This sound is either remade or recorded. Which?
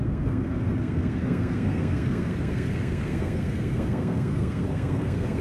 remade